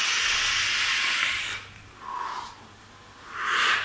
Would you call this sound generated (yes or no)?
no